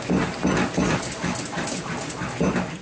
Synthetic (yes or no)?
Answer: no